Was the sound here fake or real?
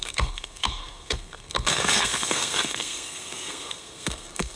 fake